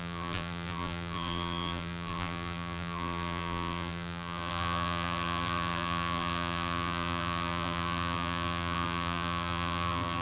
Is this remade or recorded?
remade